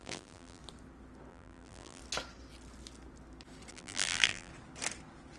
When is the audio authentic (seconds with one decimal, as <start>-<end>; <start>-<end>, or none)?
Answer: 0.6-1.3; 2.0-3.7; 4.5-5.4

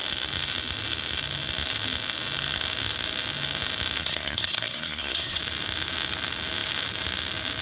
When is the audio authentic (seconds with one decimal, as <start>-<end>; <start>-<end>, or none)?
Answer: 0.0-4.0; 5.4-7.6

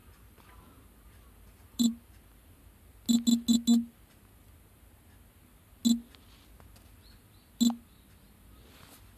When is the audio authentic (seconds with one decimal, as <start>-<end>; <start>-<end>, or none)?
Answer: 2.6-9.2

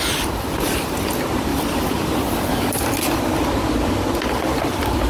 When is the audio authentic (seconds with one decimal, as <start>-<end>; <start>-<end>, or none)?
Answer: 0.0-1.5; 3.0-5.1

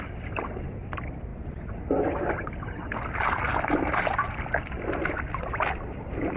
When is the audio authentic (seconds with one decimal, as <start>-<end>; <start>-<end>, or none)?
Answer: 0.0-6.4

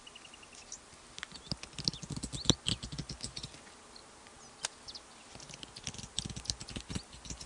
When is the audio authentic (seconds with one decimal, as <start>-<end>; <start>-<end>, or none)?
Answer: 0.0-7.5